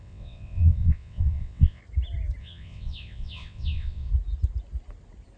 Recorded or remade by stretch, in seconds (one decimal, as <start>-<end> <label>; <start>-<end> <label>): 0.0-1.8 remade; 1.8-2.4 recorded; 2.4-4.1 remade; 4.1-5.4 recorded